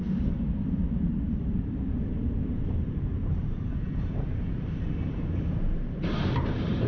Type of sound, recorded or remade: remade